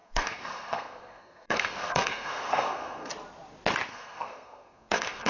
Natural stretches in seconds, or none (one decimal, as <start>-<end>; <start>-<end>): 3.1-3.9